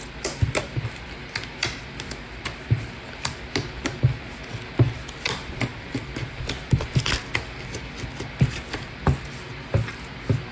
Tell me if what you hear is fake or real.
real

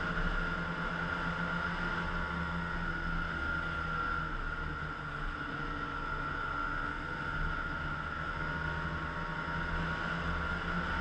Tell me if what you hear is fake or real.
real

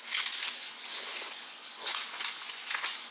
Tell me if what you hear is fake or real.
fake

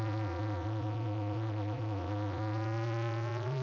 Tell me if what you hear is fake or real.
fake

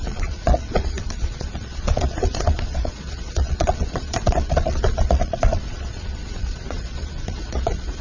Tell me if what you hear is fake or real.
fake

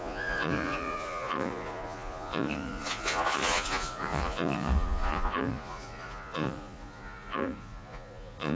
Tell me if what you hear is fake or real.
fake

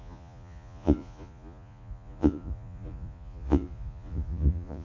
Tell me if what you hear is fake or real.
fake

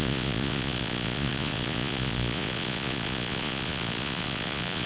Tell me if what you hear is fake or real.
fake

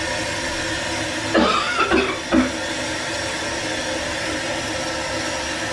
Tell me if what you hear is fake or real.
real